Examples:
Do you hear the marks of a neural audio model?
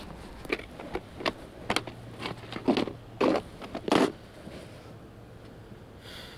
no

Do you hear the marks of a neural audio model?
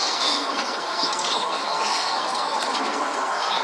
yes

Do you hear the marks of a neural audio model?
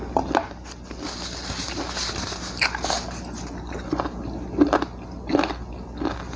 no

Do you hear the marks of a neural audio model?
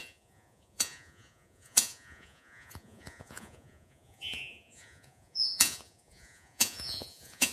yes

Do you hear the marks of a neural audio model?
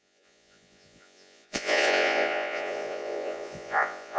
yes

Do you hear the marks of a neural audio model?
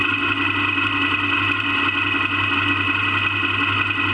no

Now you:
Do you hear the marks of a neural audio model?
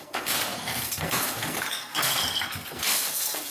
yes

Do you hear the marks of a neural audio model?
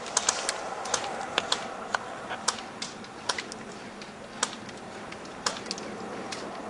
no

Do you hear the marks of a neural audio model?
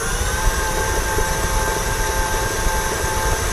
no